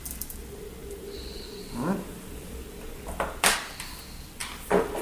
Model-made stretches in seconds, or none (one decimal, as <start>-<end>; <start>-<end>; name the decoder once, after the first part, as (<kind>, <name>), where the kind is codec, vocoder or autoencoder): 0.8-3.8 (vocoder, BigVGAN v2); 4.4-5.0